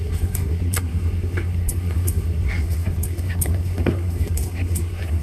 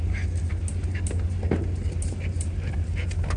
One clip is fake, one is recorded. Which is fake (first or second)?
first